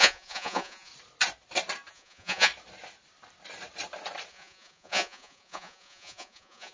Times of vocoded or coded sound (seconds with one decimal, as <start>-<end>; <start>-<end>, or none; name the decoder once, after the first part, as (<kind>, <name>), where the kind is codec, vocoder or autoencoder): 0.0-0.9 (vocoder, Vocos); 1.9-2.5; 4.3-6.7